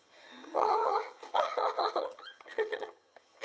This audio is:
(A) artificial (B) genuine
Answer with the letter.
A